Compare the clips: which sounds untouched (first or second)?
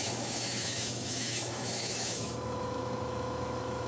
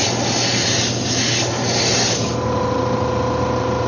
second